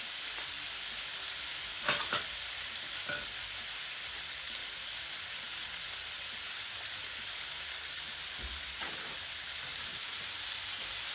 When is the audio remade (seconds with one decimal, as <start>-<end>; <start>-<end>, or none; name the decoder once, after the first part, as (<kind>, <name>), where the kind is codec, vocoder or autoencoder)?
none